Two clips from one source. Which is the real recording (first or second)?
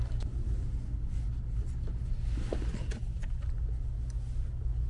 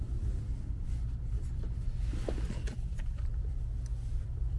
first